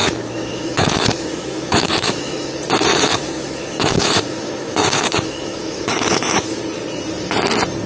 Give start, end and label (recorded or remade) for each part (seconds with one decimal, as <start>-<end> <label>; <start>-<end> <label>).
0.0-2.5 remade; 2.5-2.9 recorded; 2.9-6.6 remade; 6.6-7.9 recorded